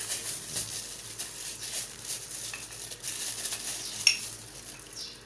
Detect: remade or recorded recorded